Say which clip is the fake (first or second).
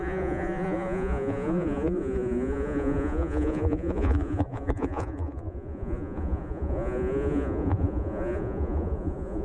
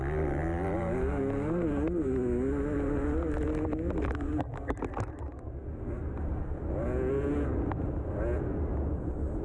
first